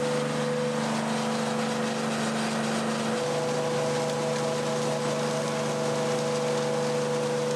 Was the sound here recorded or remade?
recorded